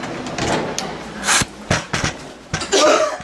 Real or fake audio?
real